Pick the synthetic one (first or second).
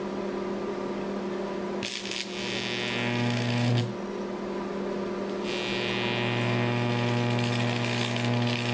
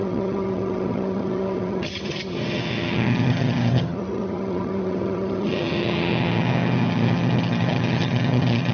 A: second